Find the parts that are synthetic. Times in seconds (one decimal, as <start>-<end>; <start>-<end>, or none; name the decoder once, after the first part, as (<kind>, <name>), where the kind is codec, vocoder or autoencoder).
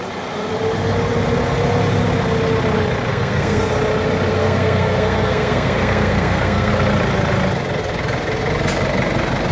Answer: 3.1-3.7 (codec, SNAC); 4.3-6.7